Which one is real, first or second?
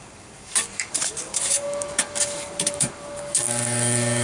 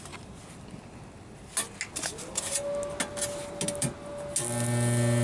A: second